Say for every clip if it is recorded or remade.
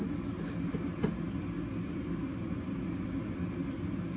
recorded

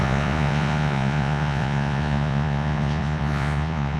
remade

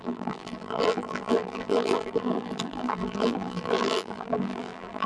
remade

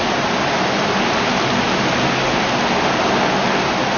recorded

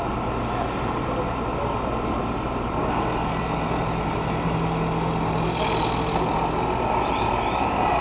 recorded